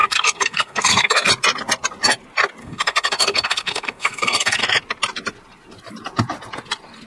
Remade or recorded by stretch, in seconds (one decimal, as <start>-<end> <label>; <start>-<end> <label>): 0.0-1.3 remade; 1.3-2.6 recorded; 2.6-4.6 remade; 4.6-7.1 recorded